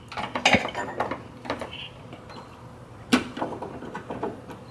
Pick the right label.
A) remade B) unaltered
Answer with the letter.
B